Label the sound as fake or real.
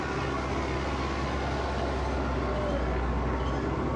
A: real